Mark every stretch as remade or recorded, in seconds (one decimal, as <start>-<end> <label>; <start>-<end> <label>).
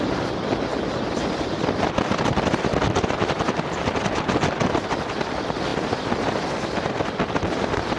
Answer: 0.0-0.7 recorded; 0.7-4.2 remade; 4.2-8.0 recorded